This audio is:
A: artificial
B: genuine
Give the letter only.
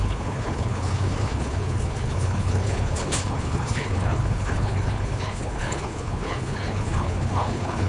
A